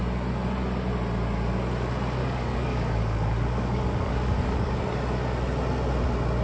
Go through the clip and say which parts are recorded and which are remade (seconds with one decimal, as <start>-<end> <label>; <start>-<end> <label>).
0.0-2.2 recorded; 2.2-4.8 remade; 4.8-6.4 recorded